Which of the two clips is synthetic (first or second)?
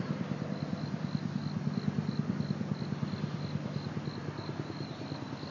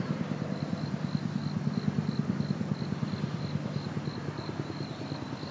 second